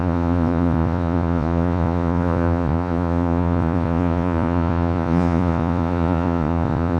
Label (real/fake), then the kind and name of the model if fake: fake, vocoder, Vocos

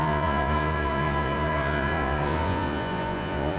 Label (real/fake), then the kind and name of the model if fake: fake, vocoder, Vocos